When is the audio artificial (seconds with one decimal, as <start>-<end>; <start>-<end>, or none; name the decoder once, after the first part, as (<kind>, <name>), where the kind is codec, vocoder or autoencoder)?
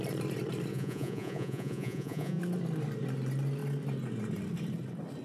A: 0.7-2.4 (vocoder, Vocos)